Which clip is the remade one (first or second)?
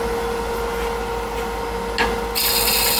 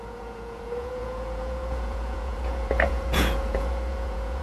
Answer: second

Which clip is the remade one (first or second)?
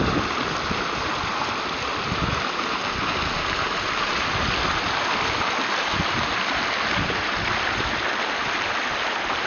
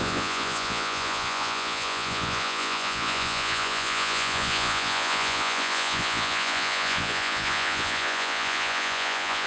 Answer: second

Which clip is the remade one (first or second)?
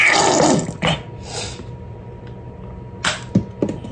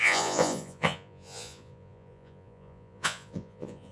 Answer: second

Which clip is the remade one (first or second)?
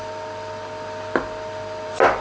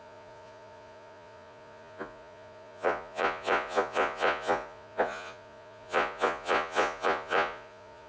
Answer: second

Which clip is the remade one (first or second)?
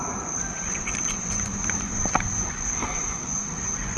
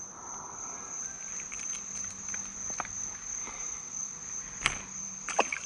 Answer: first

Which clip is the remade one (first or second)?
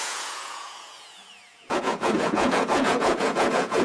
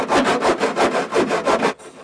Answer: first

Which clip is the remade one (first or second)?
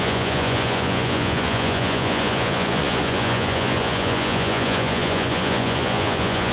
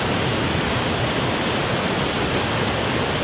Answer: first